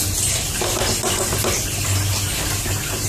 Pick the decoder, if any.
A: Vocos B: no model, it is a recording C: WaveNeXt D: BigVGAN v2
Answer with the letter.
B